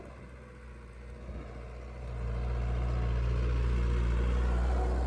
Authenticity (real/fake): real